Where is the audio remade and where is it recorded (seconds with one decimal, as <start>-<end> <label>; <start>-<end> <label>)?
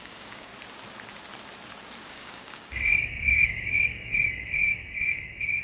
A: 0.0-0.5 remade; 0.5-2.1 recorded; 2.1-5.6 remade